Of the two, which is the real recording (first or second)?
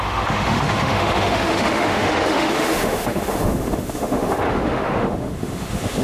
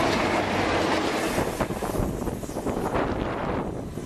second